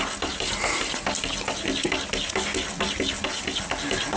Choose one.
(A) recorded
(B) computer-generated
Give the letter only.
A